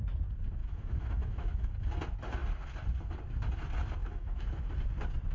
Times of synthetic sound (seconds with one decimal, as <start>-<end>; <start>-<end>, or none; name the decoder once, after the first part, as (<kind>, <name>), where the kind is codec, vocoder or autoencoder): 0.6-1.7 (autoencoder, DAC-VAE); 4.0-4.7